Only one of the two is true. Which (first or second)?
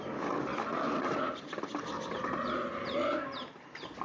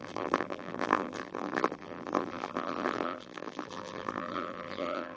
first